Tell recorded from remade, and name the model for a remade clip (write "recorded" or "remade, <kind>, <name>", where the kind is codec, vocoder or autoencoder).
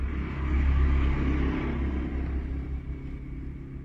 recorded